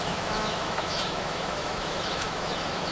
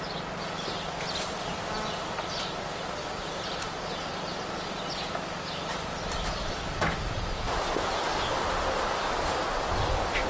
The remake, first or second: first